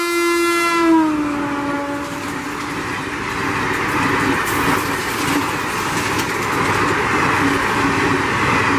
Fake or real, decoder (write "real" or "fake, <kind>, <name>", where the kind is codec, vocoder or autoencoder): real